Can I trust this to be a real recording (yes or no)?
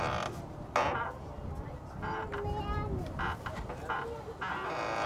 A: yes